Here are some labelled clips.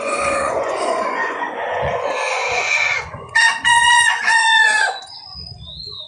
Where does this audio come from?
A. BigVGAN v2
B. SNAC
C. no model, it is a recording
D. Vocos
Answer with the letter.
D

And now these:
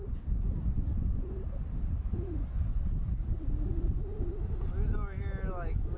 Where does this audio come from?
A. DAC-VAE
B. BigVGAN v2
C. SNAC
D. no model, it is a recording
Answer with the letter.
D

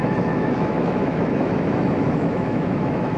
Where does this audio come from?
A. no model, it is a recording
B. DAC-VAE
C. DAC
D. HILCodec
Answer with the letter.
B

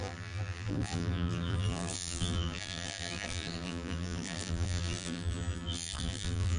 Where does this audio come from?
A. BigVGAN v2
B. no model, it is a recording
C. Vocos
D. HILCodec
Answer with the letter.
A